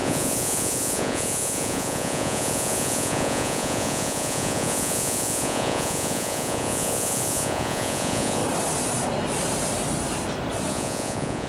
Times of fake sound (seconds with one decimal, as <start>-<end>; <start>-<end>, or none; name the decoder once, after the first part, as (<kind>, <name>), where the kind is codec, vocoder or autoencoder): 0.0-8.4 (vocoder, Vocos); 10.7-11.5